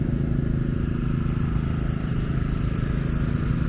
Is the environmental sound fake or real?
real